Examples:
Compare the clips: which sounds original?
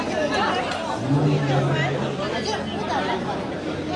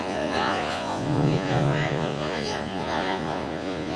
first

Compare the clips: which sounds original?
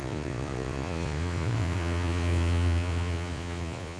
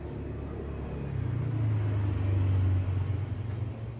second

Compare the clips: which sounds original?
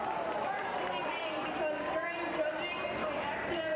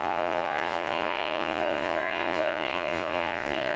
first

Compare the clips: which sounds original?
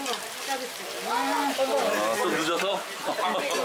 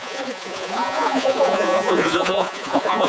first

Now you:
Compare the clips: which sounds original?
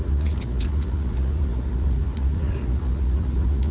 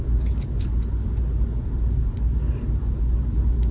second